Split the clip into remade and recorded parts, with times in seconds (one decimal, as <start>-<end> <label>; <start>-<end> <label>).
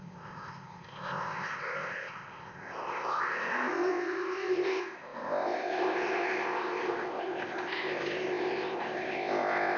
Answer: 0.0-9.8 remade